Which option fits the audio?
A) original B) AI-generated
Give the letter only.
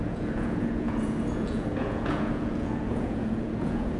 B